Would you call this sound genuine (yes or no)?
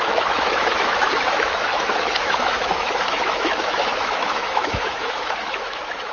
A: no